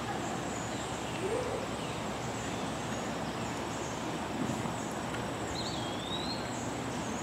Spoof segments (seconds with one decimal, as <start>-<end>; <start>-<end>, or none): none